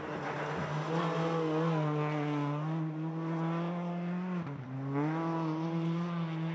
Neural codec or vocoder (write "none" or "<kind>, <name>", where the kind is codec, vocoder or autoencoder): none